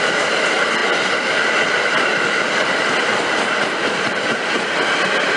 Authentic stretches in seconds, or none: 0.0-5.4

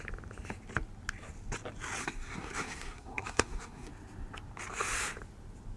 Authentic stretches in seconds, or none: 0.0-2.0; 3.9-5.8

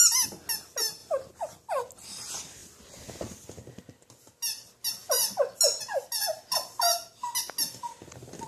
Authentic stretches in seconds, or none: 0.0-8.5

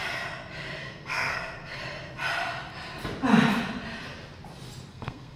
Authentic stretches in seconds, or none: 0.0-0.8; 1.8-4.9